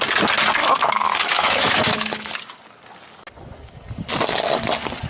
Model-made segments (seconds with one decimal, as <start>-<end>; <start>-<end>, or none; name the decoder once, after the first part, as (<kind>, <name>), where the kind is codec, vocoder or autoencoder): 0.6-2.3 (autoencoder, DAC-VAE)